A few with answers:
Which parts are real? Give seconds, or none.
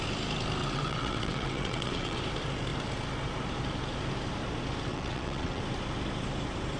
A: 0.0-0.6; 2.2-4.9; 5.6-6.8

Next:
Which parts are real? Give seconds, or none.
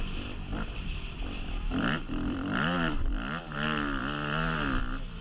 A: 0.0-0.5; 3.1-5.2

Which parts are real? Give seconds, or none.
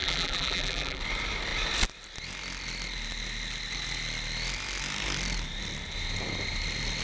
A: 1.0-7.0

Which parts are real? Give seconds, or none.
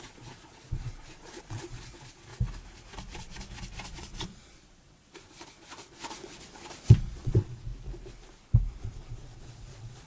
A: 2.3-3.9; 6.0-6.9; 7.7-8.7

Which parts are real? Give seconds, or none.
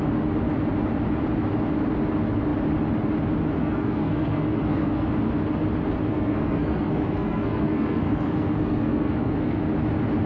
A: 0.0-3.6; 5.1-6.1; 9.6-10.3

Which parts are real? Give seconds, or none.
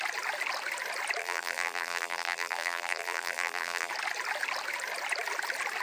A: 0.0-1.2; 3.9-5.8